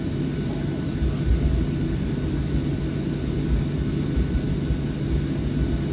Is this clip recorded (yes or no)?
yes